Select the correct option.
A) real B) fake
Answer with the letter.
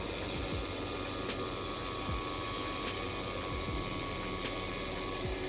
A